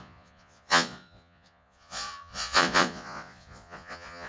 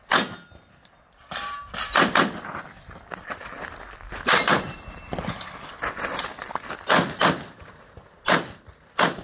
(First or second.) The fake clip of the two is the first